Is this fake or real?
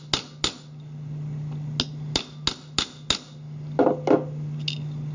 real